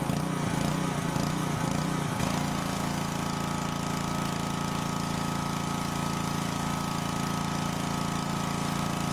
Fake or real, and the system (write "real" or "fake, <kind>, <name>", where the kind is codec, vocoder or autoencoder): real